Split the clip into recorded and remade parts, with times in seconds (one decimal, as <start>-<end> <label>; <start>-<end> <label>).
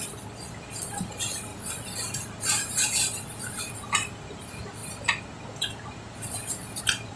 0.0-4.8 remade; 4.8-6.8 recorded; 6.8-7.2 remade